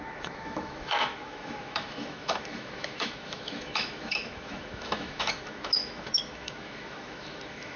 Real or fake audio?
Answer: fake